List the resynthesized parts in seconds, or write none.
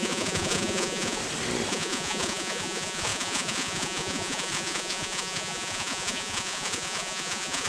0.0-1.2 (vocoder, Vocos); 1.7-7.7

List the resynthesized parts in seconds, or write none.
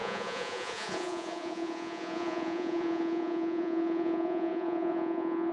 0.0-5.5 (vocoder, Vocos)